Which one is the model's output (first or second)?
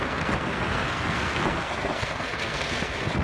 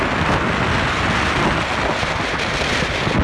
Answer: first